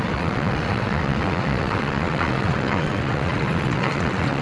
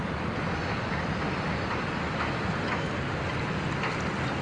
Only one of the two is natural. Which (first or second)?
second